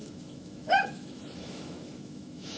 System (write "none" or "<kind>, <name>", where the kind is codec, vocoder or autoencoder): autoencoder, DAC-VAE